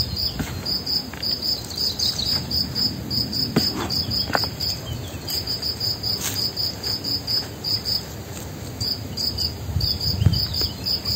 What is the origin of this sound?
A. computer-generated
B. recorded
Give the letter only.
B